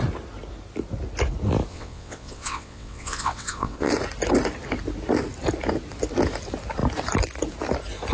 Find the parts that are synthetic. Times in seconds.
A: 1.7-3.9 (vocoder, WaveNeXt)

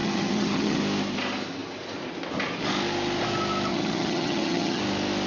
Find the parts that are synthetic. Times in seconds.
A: 0.0-0.8 (vocoder, HiFi-GAN); 3.7-4.8